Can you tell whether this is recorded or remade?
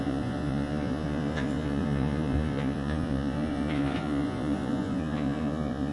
remade